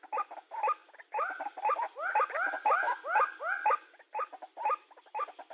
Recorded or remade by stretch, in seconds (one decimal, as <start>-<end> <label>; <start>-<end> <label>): 0.0-5.5 recorded